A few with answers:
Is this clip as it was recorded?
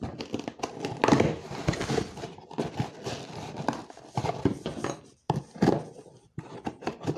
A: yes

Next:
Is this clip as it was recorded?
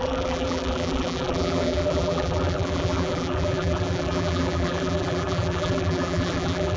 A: no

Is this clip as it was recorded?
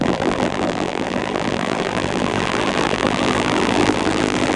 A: no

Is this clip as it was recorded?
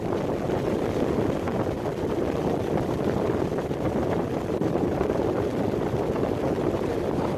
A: no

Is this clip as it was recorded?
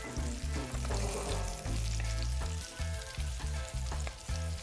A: yes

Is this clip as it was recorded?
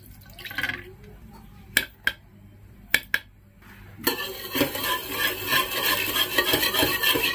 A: yes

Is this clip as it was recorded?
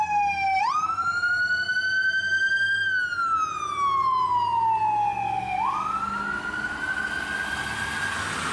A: yes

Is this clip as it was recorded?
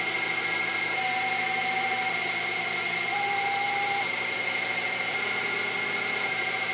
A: no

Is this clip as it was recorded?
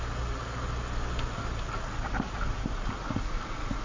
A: yes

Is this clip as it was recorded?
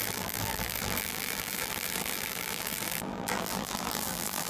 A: no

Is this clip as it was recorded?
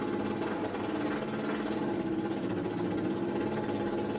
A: yes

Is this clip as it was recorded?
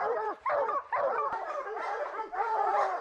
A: no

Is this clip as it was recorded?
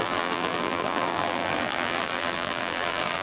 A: no